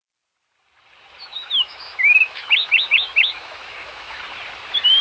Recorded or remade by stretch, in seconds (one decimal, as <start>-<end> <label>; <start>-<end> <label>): 0.0-1.2 recorded; 1.2-4.2 remade; 4.2-5.0 recorded